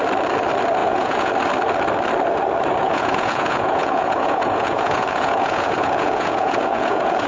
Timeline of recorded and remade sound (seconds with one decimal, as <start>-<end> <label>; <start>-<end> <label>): 0.0-0.8 recorded; 0.8-1.3 remade; 1.3-2.8 recorded; 2.8-7.3 remade